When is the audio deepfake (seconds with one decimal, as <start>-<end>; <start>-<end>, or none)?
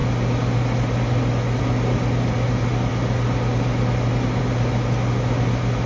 none